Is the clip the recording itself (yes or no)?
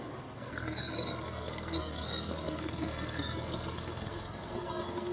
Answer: no